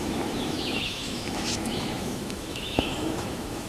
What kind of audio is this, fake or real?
fake